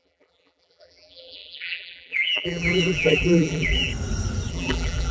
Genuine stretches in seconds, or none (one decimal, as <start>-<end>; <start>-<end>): 3.9-4.5